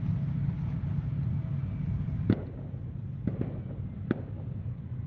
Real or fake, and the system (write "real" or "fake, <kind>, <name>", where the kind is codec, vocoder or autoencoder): real